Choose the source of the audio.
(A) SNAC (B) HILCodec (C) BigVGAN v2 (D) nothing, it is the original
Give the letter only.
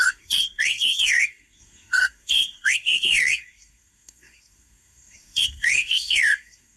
A